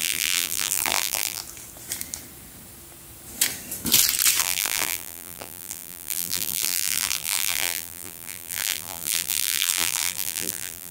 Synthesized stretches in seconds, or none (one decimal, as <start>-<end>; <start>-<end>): 0.0-1.4; 4.4-10.9